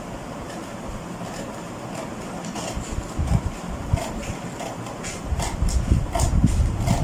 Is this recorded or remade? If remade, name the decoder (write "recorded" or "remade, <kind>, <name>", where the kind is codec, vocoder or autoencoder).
remade, vocoder, BigVGAN v2